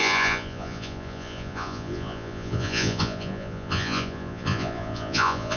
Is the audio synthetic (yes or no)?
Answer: yes